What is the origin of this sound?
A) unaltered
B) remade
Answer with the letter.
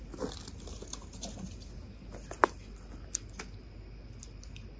A